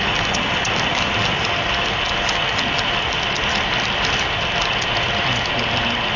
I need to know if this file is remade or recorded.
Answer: recorded